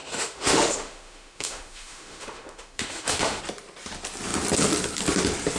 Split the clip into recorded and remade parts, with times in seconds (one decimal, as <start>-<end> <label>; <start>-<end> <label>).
0.0-3.4 remade; 3.4-5.6 recorded